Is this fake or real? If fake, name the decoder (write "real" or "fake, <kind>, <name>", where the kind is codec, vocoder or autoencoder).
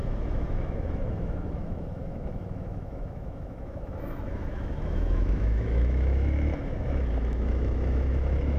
fake, autoencoder, DAC-VAE